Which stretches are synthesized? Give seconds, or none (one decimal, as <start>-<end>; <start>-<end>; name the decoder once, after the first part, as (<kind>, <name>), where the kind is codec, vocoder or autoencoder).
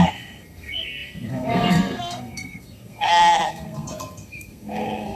0.0-5.2 (codec, SNAC)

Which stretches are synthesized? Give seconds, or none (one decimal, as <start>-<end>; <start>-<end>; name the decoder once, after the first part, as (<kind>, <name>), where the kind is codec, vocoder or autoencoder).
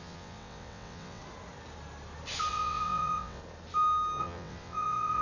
0.0-1.2 (vocoder, WaveNeXt); 2.5-3.4; 4.2-5.2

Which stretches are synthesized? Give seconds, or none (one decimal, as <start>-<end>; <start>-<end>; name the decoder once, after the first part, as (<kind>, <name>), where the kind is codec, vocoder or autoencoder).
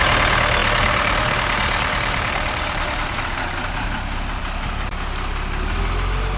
0.6-4.4 (vocoder, BigVGAN v2)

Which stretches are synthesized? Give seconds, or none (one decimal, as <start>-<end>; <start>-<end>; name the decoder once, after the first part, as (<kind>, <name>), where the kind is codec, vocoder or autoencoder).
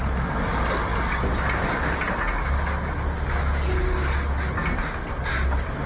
none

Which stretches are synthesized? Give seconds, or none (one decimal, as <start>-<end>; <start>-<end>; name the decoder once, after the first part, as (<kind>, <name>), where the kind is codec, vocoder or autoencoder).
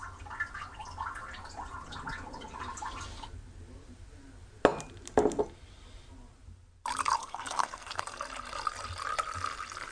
7.2-8.0 (codec, SNAC)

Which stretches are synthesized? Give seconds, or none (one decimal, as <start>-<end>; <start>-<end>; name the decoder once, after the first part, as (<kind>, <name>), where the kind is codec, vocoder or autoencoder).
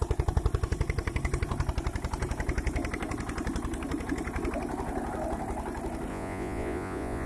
6.1-7.3 (vocoder, Vocos)